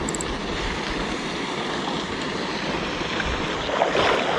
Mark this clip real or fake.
real